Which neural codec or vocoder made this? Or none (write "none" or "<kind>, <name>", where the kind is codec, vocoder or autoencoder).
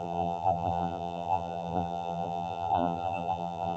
vocoder, BigVGAN v2